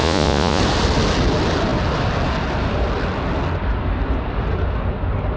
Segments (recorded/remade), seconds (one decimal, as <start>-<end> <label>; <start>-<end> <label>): 0.0-0.6 remade; 0.6-5.4 recorded